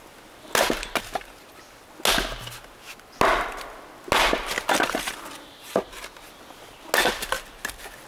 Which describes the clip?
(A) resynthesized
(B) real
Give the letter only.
B